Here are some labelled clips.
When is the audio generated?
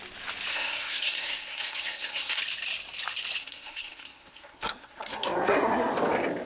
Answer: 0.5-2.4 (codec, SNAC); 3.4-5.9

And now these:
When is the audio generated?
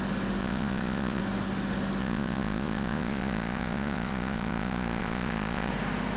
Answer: 0.4-1.2 (vocoder, Vocos); 2.0-5.7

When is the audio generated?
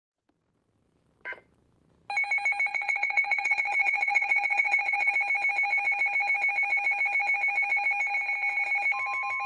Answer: 2.7-5.1 (vocoder, Vocos)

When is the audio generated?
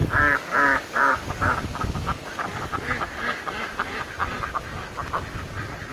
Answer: 0.0-3.5 (codec, DAC)